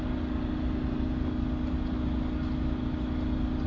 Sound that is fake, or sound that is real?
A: real